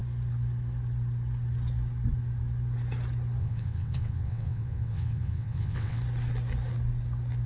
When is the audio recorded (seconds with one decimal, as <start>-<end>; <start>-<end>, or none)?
0.0-3.4; 6.0-7.5